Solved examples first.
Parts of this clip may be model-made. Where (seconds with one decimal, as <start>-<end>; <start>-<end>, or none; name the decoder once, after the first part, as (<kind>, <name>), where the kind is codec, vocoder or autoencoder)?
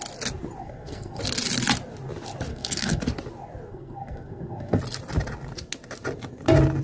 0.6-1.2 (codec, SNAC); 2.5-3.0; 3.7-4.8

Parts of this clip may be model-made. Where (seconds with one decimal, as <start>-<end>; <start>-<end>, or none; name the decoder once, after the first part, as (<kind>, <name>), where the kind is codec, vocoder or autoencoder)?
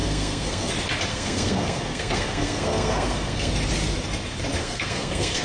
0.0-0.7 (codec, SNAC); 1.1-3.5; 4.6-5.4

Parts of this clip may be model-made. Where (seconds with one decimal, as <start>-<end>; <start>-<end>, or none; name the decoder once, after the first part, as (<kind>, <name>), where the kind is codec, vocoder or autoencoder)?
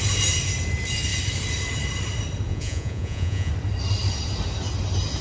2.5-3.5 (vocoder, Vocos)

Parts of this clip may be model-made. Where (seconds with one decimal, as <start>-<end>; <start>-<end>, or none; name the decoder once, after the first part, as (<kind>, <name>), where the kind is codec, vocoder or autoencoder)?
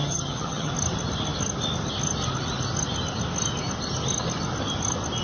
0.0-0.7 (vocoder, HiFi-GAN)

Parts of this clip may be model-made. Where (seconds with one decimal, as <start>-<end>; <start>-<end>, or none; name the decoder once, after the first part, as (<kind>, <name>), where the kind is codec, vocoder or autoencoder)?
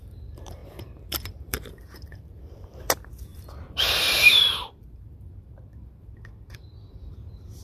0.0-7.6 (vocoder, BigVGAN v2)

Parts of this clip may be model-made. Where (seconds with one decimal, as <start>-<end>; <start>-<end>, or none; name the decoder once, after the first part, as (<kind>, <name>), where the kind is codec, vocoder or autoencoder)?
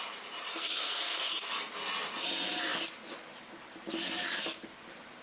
0.5-1.7 (codec, SNAC)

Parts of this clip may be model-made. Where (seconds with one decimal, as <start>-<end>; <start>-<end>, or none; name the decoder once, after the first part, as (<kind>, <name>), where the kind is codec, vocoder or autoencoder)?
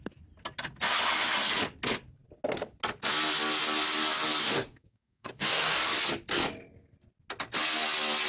4.4-5.9 (codec, DAC)